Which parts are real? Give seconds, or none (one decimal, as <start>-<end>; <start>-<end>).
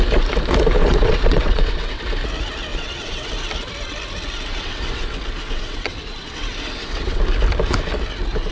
0.0-0.8; 2.0-2.7; 3.3-4.5; 5.0-5.4; 7.2-8.5